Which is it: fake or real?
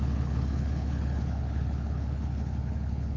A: fake